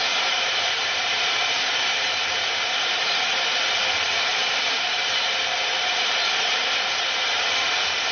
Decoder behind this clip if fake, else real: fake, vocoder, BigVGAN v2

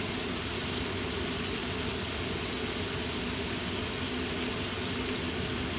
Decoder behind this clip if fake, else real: real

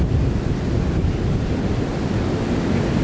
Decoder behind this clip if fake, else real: real